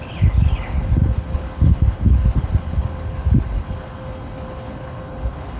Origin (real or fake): fake